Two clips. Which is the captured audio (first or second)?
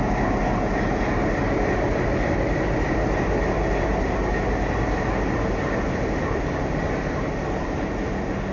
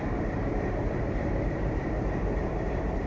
first